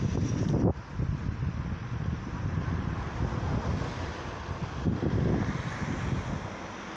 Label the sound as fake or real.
real